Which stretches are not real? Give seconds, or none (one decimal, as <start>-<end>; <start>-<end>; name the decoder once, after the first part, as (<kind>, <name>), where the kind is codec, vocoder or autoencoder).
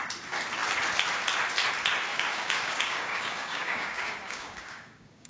2.1-5.3 (codec, DAC)